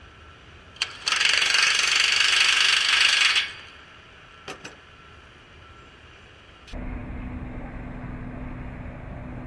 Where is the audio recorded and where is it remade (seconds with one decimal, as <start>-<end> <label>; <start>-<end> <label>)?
0.0-1.2 recorded; 1.2-1.7 remade; 1.7-9.5 recorded